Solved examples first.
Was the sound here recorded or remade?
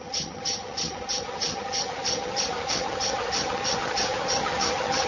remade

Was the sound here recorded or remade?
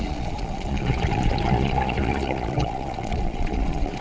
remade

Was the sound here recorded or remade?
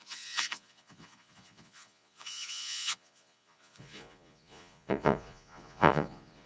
remade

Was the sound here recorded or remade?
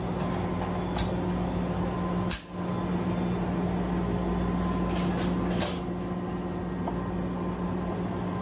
recorded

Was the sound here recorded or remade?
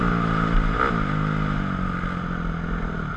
recorded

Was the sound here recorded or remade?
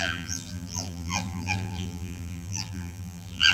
remade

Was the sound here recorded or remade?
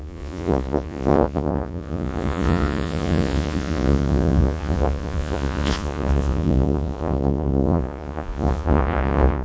remade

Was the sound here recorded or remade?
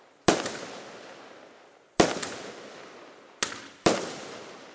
remade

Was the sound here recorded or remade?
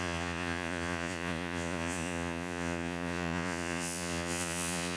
remade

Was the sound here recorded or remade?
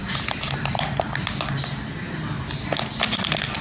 recorded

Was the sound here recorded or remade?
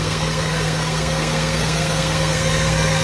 remade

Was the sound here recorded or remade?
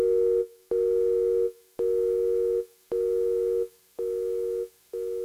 remade